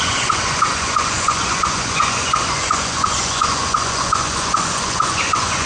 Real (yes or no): no